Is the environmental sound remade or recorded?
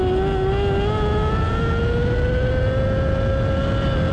recorded